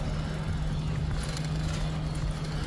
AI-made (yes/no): no